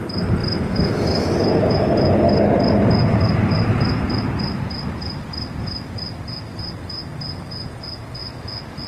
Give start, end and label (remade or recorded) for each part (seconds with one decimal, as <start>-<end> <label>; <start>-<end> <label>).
0.0-3.0 recorded; 3.0-7.5 remade; 7.5-8.9 recorded